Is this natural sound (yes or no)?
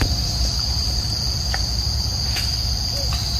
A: no